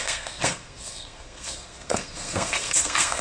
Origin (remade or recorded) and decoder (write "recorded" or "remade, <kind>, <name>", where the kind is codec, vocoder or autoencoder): remade, codec, SNAC